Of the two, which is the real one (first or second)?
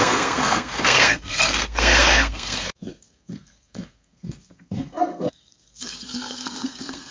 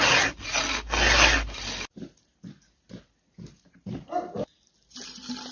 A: second